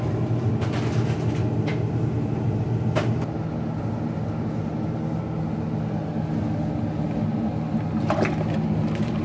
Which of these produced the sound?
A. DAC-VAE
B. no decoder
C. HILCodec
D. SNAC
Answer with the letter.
B